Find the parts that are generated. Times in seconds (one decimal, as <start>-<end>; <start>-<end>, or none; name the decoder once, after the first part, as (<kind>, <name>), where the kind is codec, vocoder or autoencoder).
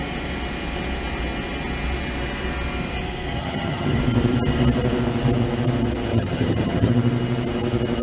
3.4-4.0 (vocoder, HiFi-GAN); 6.1-6.9